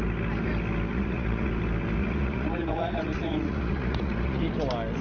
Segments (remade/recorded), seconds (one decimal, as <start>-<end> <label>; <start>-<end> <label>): 0.0-0.9 recorded; 0.9-1.5 remade; 1.5-2.0 recorded; 2.0-4.4 remade; 4.4-5.0 recorded